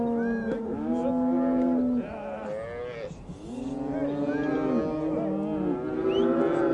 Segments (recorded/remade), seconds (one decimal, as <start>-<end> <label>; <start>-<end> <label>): 0.0-6.7 recorded

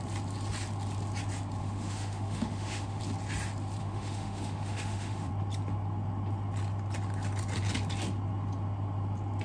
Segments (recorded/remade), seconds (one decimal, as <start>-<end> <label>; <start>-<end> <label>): 0.0-1.6 recorded; 1.6-3.0 remade; 3.0-3.8 recorded; 3.8-5.3 remade; 5.3-9.4 recorded

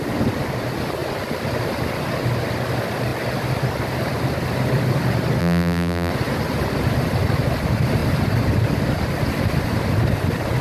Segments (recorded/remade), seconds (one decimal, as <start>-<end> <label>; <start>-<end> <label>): 0.0-5.4 recorded; 5.4-6.1 remade; 6.1-10.6 recorded

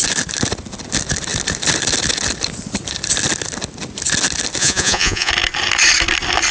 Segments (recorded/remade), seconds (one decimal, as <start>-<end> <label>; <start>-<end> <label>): 0.0-4.6 recorded; 4.6-5.3 remade; 5.3-6.5 recorded

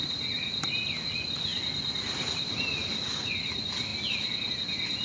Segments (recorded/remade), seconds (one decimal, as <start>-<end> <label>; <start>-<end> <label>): 0.0-5.0 recorded